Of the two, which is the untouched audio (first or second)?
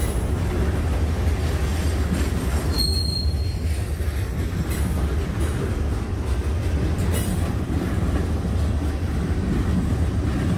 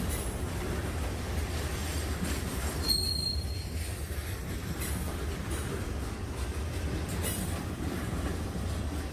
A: first